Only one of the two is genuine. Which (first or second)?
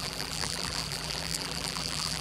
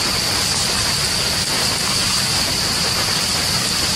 second